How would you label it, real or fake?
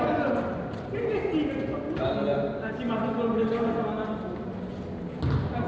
real